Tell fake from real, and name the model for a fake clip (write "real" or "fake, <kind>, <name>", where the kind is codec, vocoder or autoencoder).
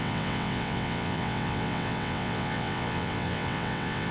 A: fake, vocoder, WaveNeXt